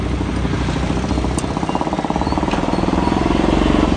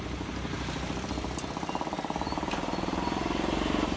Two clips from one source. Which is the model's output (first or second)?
second